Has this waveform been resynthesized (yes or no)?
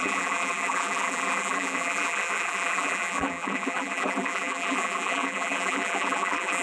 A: yes